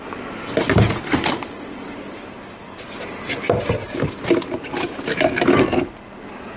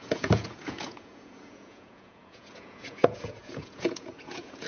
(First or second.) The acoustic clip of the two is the first